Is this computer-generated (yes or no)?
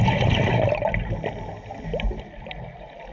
no